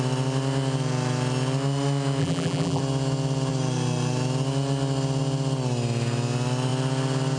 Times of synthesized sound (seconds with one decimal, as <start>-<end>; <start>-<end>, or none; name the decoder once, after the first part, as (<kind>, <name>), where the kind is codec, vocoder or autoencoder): 2.2-2.8 (vocoder, BigVGAN v2)